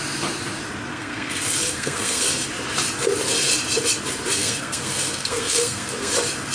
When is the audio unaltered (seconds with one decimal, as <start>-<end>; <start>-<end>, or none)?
0.0-0.9; 2.3-4.4; 6.1-6.5